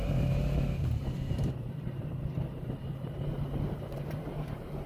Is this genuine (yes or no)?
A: no